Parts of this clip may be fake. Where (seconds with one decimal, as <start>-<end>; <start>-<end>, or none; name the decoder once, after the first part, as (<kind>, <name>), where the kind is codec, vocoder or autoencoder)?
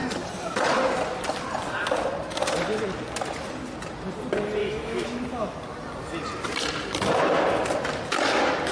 4.6-5.2 (autoencoder, DAC-VAE)